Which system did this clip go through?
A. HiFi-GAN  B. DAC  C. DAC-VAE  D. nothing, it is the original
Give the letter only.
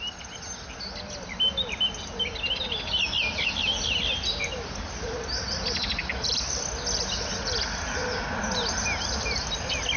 D